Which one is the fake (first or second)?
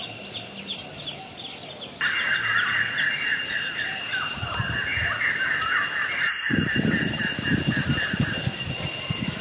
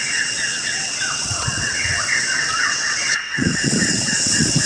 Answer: second